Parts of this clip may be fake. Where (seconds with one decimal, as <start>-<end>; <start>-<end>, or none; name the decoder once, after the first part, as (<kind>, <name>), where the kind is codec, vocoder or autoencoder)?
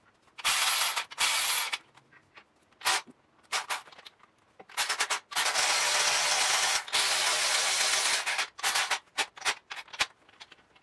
none